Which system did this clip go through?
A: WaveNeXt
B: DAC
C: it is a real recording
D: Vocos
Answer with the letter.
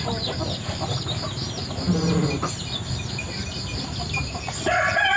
C